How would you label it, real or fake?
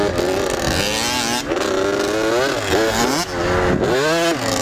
real